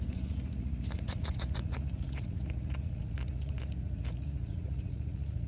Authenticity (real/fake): fake